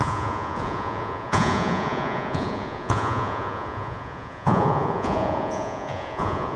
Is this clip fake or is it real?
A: fake